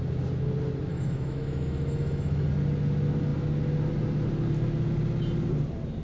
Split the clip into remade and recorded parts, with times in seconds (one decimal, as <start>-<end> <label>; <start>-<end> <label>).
0.0-0.9 recorded; 0.9-2.5 remade; 2.5-6.0 recorded